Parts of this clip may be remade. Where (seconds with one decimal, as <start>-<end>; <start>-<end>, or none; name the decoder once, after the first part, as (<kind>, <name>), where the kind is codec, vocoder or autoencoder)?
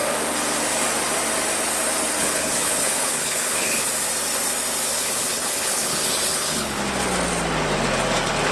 2.2-3.9 (codec, HILCodec); 4.9-6.8